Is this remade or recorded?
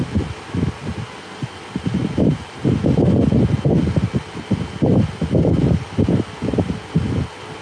recorded